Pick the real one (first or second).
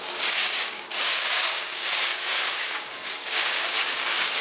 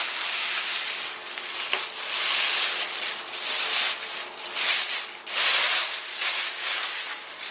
second